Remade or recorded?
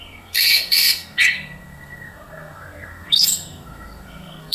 remade